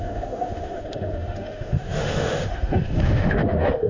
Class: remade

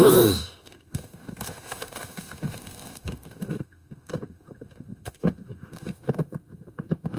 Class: remade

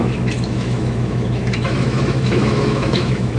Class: remade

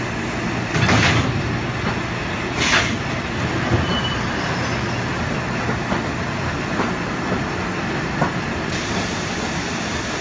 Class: recorded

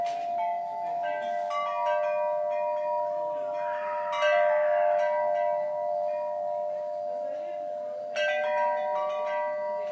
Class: recorded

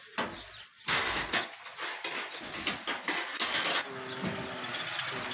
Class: recorded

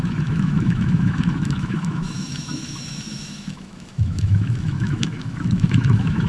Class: remade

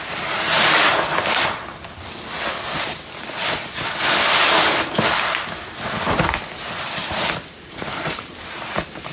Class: recorded